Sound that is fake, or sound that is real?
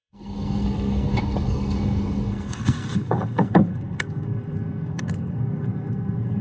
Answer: fake